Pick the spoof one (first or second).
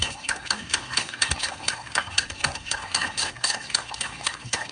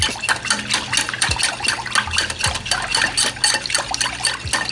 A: first